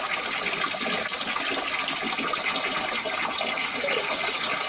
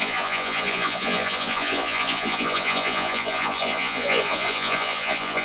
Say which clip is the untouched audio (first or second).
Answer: first